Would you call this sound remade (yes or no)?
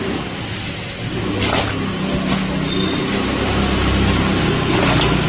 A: no